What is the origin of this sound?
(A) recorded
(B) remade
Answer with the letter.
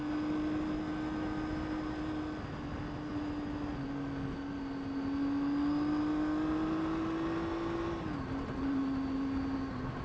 A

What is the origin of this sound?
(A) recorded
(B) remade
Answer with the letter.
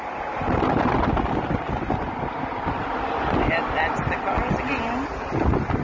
A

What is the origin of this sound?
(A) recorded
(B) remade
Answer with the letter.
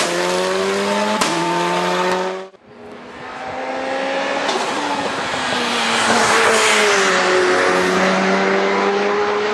A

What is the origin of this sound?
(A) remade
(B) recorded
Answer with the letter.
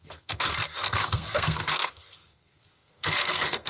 A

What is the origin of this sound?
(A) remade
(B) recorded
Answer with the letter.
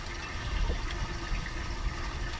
B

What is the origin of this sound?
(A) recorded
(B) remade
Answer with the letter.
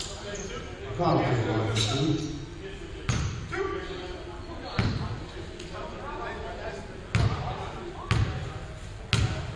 A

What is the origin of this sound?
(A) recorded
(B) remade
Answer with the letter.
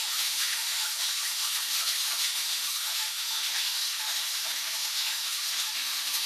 B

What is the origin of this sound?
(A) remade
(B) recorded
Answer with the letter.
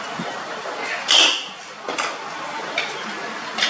B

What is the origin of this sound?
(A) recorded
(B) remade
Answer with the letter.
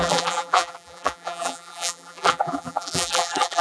B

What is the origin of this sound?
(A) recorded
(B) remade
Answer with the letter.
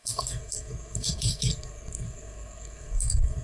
B